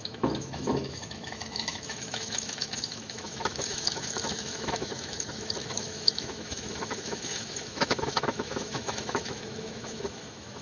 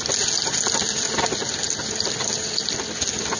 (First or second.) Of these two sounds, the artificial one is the first